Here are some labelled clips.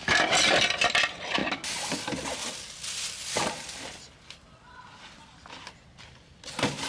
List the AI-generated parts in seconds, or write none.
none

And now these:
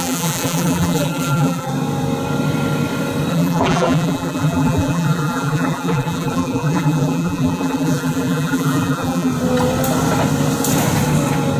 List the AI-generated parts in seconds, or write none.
0.0-1.7 (vocoder, BigVGAN v2); 3.3-9.3